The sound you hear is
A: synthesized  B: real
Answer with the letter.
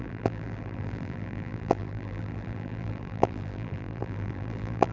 A